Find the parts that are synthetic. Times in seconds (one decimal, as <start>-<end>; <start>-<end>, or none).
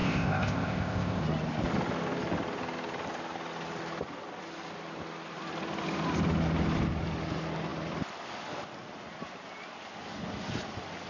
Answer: 0.0-1.2